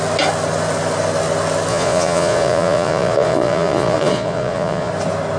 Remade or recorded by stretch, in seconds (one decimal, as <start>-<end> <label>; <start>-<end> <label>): 0.0-1.7 recorded; 1.7-4.9 remade; 4.9-5.4 recorded